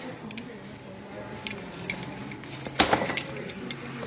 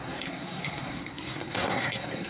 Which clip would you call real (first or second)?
first